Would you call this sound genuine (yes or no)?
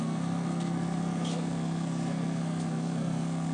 no